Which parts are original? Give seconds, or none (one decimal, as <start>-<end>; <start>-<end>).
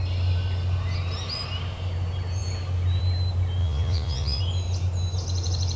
0.0-3.6; 4.4-5.8